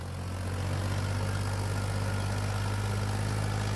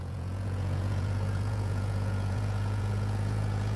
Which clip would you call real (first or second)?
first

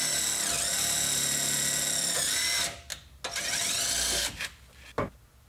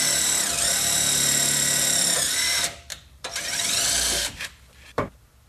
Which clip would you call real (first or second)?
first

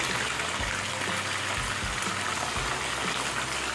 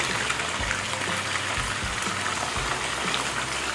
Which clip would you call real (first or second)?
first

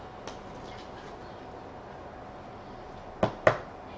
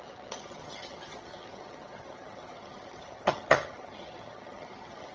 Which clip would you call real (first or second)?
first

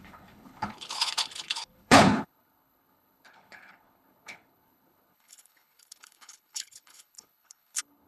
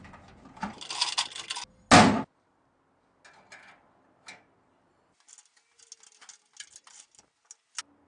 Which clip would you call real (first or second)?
second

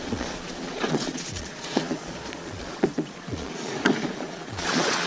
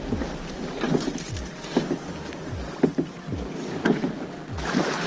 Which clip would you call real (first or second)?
second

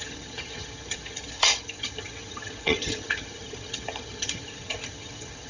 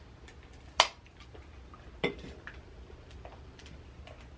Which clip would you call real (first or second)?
second